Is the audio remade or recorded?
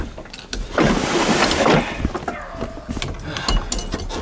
recorded